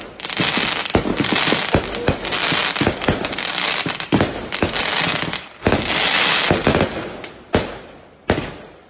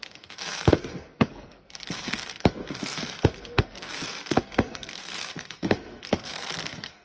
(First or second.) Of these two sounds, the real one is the first